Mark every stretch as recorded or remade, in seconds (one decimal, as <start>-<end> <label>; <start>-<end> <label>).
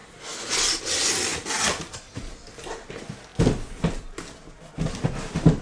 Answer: 0.0-5.6 recorded